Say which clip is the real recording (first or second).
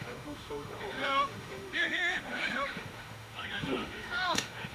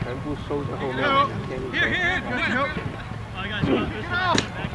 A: second